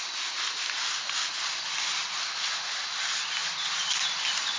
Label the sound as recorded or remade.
recorded